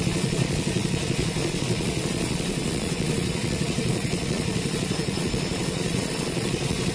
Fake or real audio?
fake